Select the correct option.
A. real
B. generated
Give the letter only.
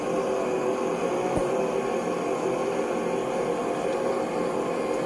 A